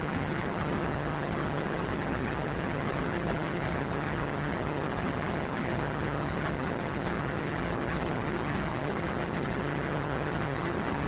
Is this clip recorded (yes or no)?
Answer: no